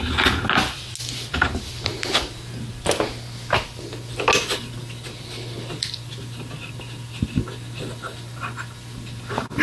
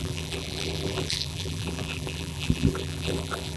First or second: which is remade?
second